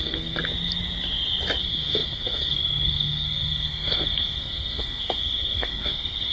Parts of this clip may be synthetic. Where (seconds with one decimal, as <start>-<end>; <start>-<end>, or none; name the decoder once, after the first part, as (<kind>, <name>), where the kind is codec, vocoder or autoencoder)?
0.0-0.4 (codec, SNAC); 1.6-6.3